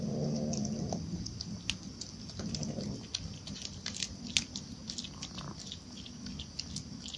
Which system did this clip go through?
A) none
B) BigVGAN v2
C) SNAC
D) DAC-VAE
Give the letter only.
A